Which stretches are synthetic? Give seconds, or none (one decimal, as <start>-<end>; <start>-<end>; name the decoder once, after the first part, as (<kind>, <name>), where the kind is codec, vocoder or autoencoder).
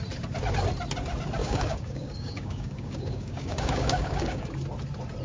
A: 1.4-4.5 (codec, DAC)